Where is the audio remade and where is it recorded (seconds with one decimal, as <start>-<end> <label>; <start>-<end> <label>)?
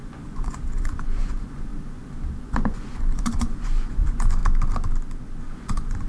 0.0-1.7 remade; 1.7-2.4 recorded; 2.4-4.4 remade; 4.4-5.4 recorded; 5.4-6.1 remade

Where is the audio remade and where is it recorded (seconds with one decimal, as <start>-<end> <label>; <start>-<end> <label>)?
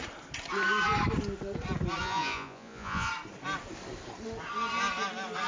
0.0-2.0 recorded; 2.0-3.1 remade; 3.1-5.5 recorded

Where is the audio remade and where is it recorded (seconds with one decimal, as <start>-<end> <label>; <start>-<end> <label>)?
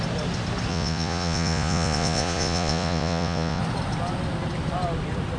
0.0-0.7 recorded; 0.7-3.6 remade; 3.6-5.4 recorded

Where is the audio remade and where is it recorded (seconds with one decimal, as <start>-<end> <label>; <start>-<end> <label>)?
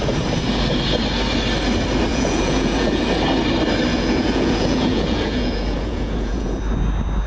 0.0-2.1 recorded; 2.1-3.0 remade; 3.0-3.9 recorded; 3.9-6.6 remade; 6.6-7.3 recorded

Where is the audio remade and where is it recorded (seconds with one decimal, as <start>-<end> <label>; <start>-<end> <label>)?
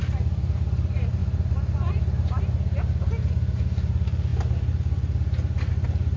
0.0-6.2 recorded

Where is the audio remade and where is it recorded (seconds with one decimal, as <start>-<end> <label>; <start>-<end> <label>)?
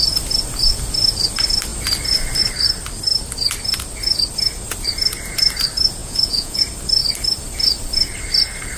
0.0-6.0 recorded; 6.0-6.6 remade; 6.6-8.8 recorded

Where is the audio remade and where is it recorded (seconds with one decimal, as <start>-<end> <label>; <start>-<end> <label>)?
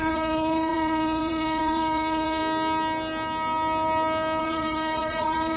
0.0-2.4 remade; 2.4-4.4 recorded; 4.4-5.6 remade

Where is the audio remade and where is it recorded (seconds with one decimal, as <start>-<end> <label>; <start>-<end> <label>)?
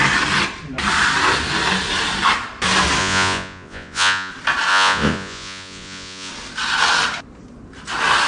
0.0-3.0 recorded; 3.0-4.3 remade; 4.3-4.7 recorded; 4.7-6.3 remade; 6.3-8.3 recorded